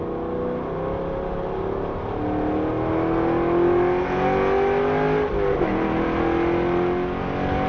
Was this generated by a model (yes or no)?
no